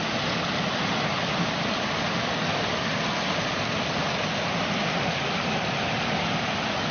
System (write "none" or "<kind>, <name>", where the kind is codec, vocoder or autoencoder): none